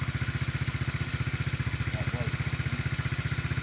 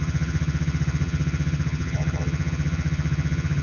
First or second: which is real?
first